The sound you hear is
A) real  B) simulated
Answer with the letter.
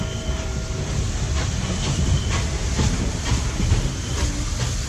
A